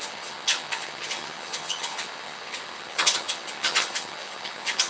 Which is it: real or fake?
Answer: fake